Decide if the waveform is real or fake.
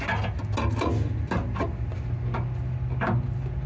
real